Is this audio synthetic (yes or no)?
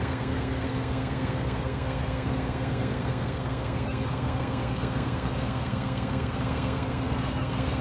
yes